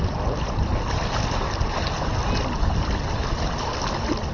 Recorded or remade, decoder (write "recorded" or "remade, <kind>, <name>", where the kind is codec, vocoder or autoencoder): recorded